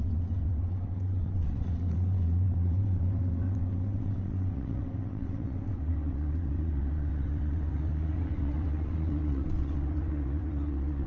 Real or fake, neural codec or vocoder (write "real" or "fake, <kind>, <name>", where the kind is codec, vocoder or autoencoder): fake, vocoder, WaveNeXt